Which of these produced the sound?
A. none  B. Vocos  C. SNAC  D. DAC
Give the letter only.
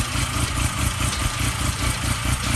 B